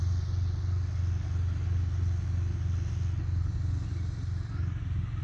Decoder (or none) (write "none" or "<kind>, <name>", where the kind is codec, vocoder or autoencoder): none